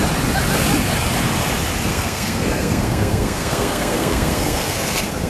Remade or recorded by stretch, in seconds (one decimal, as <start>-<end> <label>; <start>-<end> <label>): 0.0-1.9 recorded; 1.9-5.3 remade